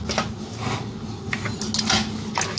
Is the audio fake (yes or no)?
no